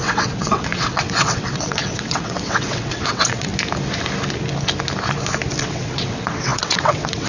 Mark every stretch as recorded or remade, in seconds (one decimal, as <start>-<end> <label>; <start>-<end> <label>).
0.0-3.5 remade; 3.5-5.6 recorded; 5.6-7.3 remade